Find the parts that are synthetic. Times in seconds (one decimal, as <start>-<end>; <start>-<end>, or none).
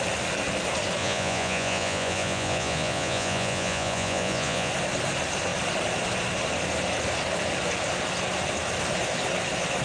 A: 1.0-4.7